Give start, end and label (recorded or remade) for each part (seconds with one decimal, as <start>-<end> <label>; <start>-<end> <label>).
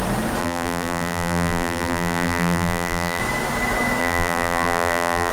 0.0-0.4 recorded; 0.4-3.2 remade; 3.2-4.0 recorded; 4.0-5.3 remade